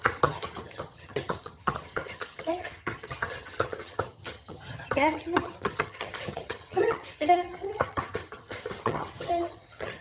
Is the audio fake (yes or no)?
yes